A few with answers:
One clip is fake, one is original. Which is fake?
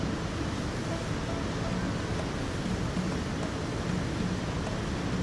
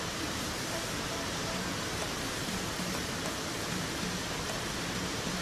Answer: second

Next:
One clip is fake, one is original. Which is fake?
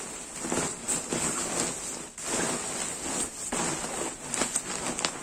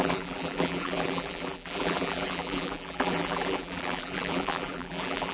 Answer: second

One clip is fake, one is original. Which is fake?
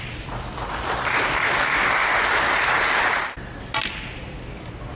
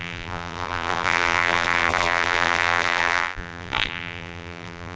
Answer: second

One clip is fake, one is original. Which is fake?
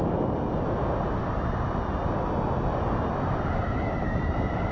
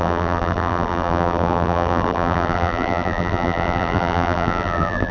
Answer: second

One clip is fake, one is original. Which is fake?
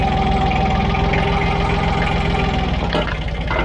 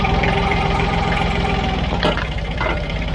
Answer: second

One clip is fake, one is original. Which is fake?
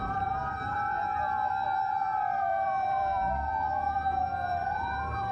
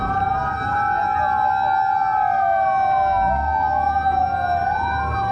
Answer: first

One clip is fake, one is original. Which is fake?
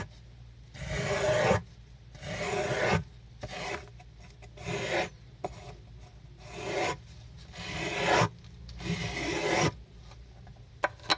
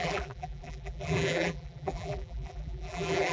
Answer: second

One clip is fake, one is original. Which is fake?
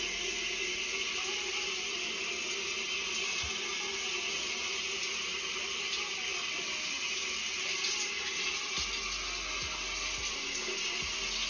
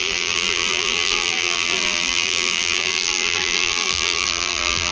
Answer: second